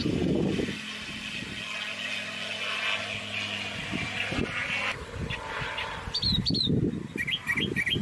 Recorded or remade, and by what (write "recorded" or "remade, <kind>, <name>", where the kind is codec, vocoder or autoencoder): recorded